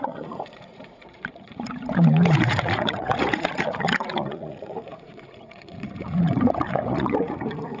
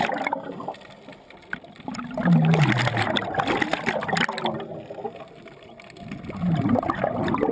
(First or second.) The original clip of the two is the second